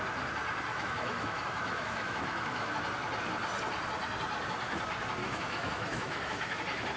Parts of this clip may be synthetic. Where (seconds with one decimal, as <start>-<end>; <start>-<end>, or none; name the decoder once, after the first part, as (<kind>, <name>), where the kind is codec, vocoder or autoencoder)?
0.7-2.8 (autoencoder, DAC-VAE); 5.2-6.6